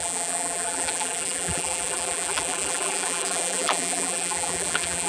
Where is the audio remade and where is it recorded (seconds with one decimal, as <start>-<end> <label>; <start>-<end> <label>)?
0.0-5.1 remade